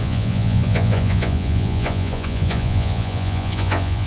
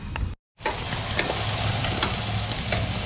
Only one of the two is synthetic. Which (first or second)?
first